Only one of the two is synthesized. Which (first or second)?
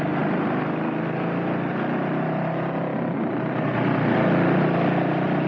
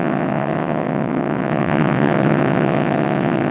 second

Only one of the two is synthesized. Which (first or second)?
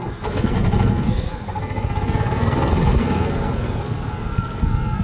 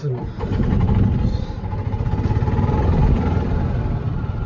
first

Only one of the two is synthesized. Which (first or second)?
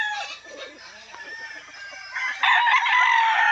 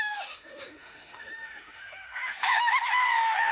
second